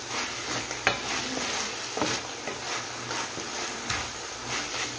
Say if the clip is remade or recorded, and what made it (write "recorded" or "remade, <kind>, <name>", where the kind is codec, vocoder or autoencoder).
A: recorded